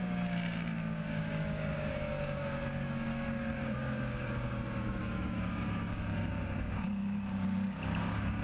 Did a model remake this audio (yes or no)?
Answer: yes